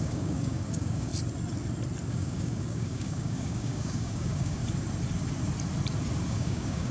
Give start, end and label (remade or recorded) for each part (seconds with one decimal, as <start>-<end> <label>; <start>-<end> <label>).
0.0-1.1 remade; 1.1-2.1 recorded; 2.1-4.6 remade; 4.6-6.3 recorded; 6.3-6.9 remade